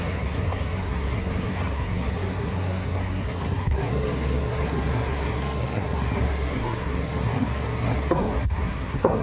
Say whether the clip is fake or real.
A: fake